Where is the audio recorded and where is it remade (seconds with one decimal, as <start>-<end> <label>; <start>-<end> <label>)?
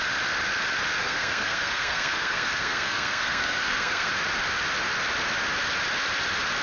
0.0-1.0 recorded; 1.0-4.1 remade; 4.1-6.6 recorded